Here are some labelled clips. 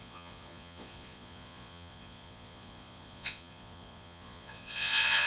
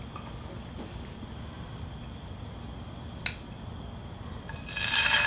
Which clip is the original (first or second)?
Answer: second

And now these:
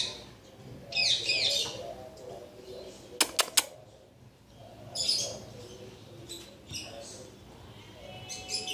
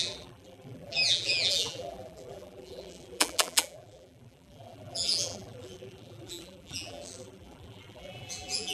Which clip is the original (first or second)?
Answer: first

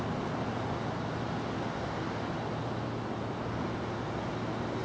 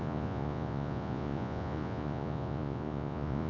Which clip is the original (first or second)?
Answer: first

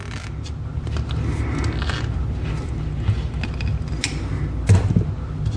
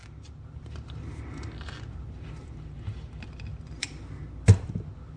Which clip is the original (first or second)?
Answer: first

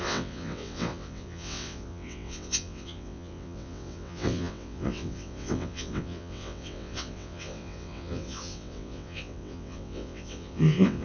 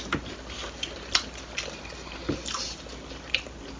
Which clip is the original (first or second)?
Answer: second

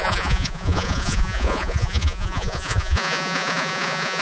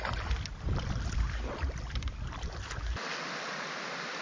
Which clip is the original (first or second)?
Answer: second